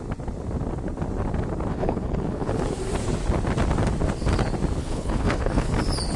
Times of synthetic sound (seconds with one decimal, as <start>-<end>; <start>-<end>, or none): 1.7-2.5; 4.8-5.7